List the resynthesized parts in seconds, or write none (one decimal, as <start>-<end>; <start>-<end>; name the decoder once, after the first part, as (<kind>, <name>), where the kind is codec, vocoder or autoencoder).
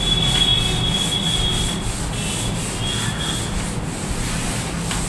none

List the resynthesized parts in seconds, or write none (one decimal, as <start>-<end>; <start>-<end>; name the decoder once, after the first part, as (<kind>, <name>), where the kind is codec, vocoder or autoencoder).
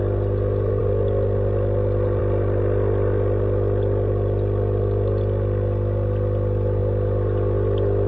none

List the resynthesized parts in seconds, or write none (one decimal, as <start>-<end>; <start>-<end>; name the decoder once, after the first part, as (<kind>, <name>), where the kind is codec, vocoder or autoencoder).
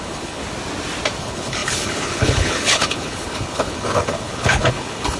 0.0-0.4 (codec, HILCodec); 1.2-5.2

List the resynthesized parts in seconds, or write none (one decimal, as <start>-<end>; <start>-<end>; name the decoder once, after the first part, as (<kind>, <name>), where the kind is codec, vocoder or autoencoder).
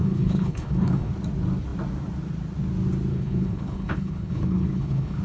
0.0-1.1 (codec, HILCodec); 3.1-5.2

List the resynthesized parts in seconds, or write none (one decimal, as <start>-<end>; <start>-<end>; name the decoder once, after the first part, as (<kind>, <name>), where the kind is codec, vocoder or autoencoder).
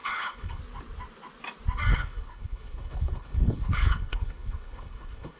0.0-0.6 (codec, HILCodec); 1.9-5.4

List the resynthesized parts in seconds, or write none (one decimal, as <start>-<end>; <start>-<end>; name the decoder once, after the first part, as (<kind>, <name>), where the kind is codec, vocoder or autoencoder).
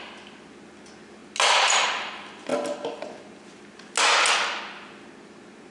none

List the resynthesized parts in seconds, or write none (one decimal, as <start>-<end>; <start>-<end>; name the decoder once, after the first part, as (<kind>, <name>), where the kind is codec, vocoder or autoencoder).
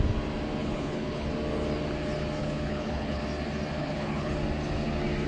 0.6-1.3 (codec, HILCodec); 2.4-3.2; 3.8-4.3